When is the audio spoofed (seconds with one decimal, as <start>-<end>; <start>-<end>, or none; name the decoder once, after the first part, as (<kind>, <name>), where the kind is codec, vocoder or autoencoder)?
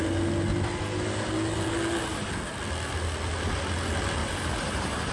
4.2-5.1 (vocoder, BigVGAN v2)